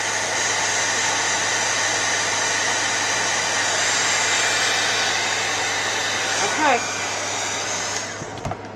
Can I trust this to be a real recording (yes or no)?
yes